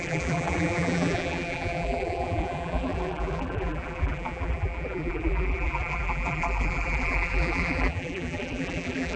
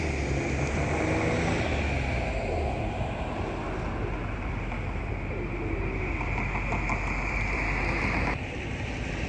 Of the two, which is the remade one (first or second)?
first